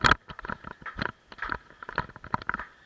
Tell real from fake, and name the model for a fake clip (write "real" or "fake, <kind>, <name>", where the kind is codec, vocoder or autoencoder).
fake, vocoder, BigVGAN v2